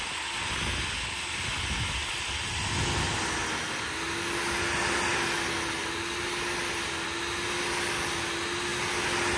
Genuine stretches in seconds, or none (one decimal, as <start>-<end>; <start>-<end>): 0.0-9.4